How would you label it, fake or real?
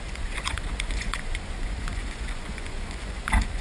fake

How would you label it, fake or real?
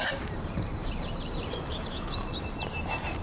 fake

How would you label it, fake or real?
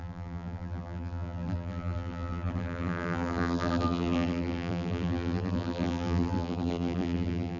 fake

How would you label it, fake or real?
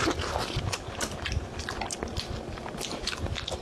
fake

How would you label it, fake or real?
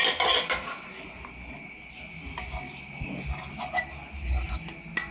real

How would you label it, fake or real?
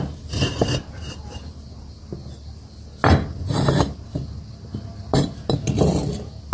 real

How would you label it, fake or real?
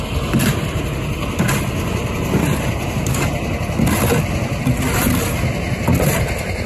real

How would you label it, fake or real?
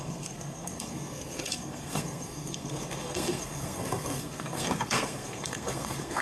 fake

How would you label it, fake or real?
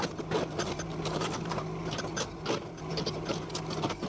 real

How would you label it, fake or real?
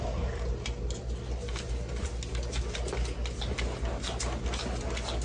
real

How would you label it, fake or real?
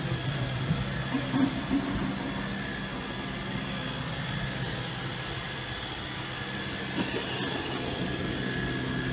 real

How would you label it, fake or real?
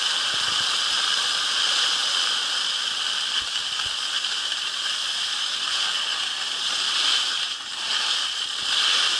real